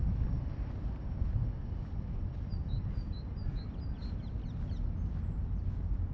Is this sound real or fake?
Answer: real